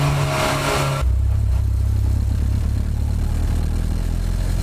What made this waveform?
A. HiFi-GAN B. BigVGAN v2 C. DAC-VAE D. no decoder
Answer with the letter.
D